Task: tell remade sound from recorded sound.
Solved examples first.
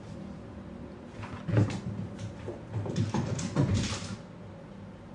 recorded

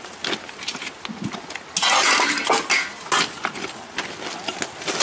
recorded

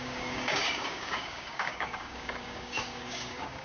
remade